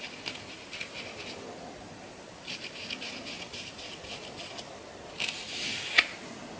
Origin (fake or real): real